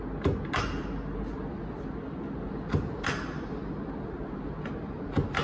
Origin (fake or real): real